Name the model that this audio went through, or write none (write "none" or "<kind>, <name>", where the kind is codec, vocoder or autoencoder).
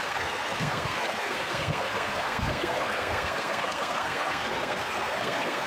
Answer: codec, SNAC